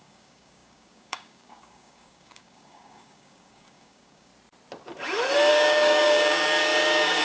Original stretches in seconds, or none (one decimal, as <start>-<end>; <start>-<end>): 4.3-5.5